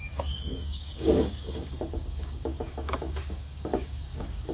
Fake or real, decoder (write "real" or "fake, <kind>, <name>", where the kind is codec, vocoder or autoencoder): fake, codec, DAC